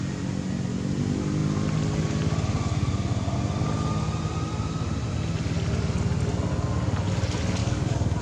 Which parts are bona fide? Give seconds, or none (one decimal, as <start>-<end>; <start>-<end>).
0.0-7.6